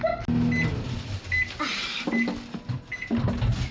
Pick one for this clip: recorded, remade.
recorded